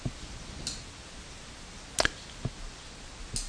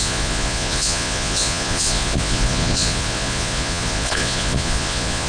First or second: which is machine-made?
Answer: second